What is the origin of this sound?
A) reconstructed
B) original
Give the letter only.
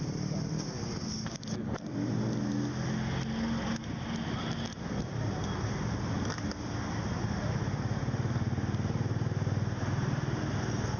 B